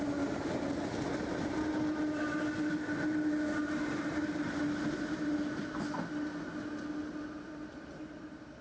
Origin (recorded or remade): recorded